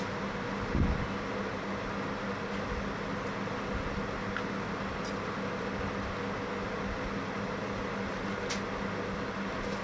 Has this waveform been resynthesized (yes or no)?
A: no